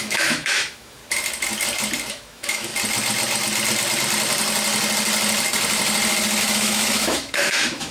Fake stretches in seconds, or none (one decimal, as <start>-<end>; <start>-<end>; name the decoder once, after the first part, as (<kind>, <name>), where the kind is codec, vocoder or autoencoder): 0.0-1.0 (autoencoder, DAC-VAE); 2.1-2.7; 6.4-7.9

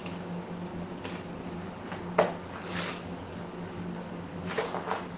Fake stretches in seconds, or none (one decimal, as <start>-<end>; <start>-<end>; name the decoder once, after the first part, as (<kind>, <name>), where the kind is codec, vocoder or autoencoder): 2.4-5.2 (codec, DAC)

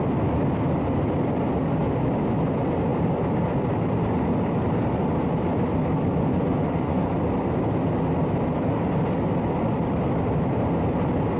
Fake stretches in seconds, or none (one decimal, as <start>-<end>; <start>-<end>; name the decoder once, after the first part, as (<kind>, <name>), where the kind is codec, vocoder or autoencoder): 6.2-7.1 (vocoder, Vocos)

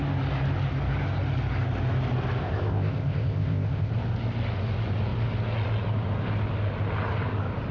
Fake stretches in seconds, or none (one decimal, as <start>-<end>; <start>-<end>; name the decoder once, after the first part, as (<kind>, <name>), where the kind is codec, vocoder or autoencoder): 2.4-3.9 (codec, ZipCodec)

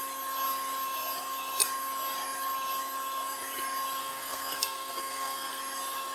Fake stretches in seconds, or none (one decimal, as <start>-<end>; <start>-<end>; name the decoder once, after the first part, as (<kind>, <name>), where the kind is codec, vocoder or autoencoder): 4.0-5.6 (codec, SNAC)

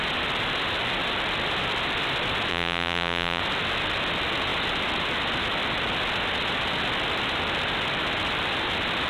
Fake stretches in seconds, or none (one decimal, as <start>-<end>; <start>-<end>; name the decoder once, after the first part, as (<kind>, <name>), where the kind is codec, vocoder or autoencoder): 2.5-3.4 (vocoder, BigVGAN v2)

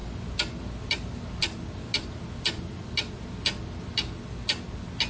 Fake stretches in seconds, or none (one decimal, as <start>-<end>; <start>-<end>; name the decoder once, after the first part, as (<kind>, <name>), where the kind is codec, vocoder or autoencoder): none